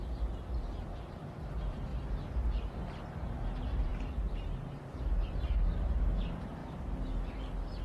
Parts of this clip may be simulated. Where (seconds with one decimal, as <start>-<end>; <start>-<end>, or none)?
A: 0.0-1.9; 3.0-6.6

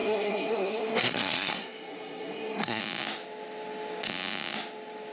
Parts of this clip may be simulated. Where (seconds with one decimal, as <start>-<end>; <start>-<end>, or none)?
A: 0.0-2.8

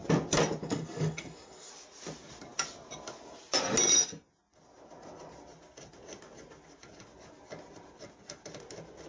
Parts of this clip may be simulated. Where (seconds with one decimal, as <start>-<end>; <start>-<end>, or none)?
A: 0.6-1.7

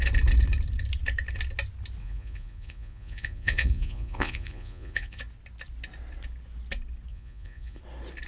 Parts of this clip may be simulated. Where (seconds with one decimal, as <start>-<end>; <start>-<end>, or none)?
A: 2.0-5.2; 7.1-7.8

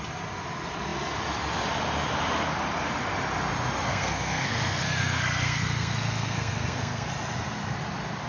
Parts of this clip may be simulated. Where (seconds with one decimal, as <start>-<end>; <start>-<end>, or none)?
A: 3.9-7.1

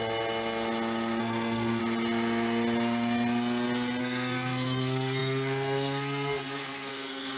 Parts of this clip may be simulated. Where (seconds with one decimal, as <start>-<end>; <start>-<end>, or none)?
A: 1.2-1.8; 4.0-7.4